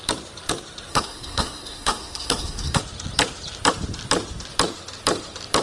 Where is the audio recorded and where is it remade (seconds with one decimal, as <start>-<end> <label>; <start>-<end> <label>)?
0.0-0.9 recorded; 0.9-2.8 remade; 2.8-5.6 recorded